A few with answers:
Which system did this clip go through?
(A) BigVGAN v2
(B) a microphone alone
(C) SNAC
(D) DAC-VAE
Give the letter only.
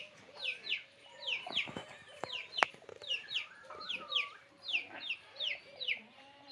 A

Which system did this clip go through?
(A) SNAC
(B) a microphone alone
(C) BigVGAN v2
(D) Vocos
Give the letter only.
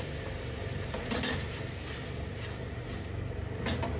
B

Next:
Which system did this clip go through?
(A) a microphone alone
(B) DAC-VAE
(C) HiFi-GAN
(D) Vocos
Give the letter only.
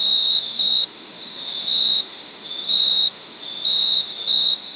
B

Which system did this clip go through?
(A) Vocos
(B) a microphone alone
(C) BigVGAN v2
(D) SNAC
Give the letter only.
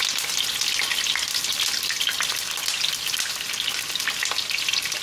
B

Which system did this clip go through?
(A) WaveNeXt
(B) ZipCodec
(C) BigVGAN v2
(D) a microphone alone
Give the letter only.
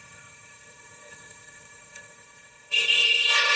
B